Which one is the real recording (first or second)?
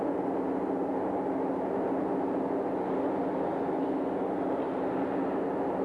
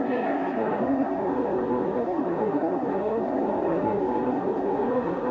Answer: first